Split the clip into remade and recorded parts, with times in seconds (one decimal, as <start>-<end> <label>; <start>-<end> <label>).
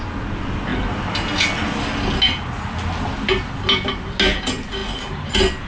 0.0-5.7 recorded